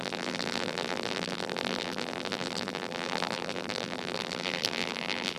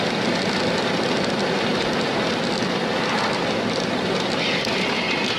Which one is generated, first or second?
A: first